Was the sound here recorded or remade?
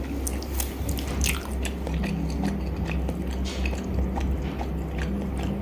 recorded